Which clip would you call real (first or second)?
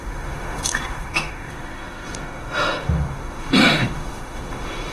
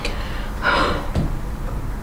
second